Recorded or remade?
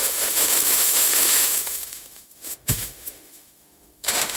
remade